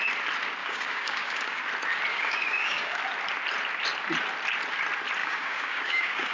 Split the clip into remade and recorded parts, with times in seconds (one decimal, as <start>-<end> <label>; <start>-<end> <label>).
0.0-0.6 recorded; 0.6-1.6 remade; 1.6-2.1 recorded; 2.1-3.0 remade; 3.0-5.2 recorded; 5.2-6.3 remade